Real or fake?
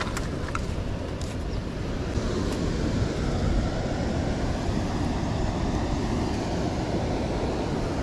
real